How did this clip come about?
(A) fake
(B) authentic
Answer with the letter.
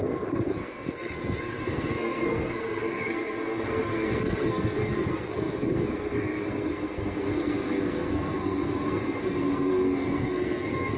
A